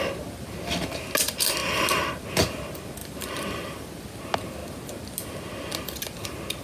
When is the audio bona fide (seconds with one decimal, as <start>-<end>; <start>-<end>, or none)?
0.0-3.0; 3.9-6.6